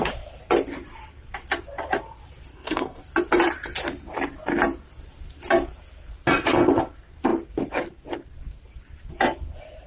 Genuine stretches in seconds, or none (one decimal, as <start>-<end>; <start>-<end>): 0.0-2.5; 3.0-9.9